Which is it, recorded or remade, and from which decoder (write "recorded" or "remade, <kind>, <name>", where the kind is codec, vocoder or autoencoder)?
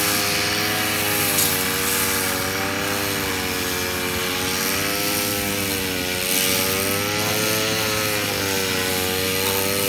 recorded